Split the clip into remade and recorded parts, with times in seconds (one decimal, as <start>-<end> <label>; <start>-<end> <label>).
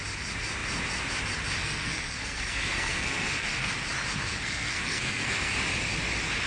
0.0-1.6 recorded; 1.6-3.7 remade; 3.7-4.2 recorded; 4.2-5.5 remade; 5.5-6.5 recorded